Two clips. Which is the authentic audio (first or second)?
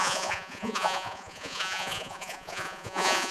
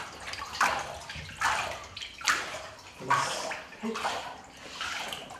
second